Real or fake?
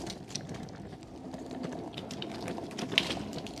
real